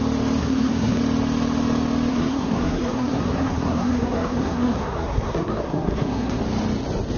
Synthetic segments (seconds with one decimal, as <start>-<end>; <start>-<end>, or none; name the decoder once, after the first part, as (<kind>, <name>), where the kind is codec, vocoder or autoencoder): 0.4-1.0 (codec, SNAC); 2.1-6.4